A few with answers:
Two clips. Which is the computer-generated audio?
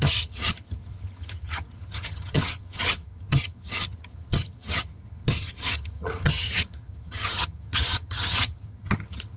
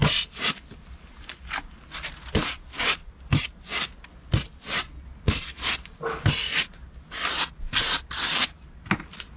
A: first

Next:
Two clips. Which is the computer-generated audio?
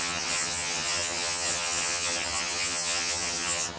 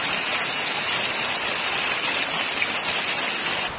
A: first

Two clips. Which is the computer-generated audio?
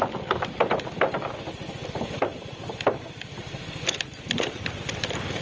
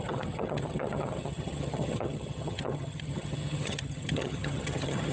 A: second